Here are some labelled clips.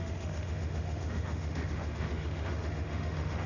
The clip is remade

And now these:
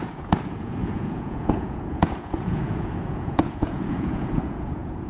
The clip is remade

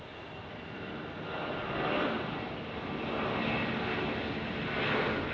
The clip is recorded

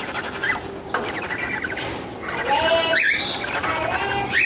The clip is recorded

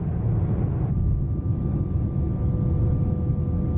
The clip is recorded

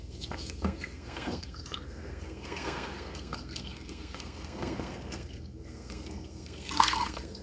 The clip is remade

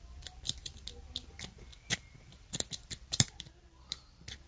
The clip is remade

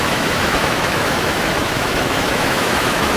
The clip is remade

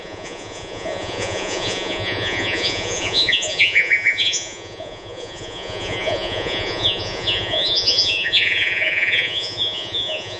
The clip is remade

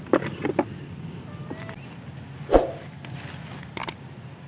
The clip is recorded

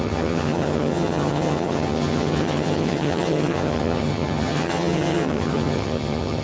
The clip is remade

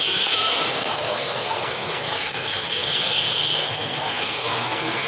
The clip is remade